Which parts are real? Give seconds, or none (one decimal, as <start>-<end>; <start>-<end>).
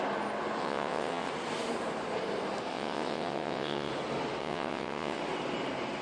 0.0-0.6; 1.3-2.7; 3.9-4.4; 5.2-6.0